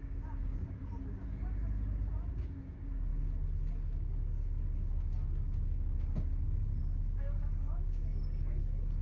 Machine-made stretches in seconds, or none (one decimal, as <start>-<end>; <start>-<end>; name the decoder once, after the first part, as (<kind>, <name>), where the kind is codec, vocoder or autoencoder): 0.0-0.8 (codec, DAC); 2.3-3.1; 3.7-4.2; 4.9-9.0